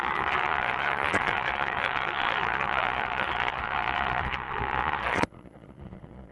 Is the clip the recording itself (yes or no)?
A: no